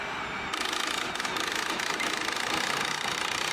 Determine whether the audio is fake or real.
real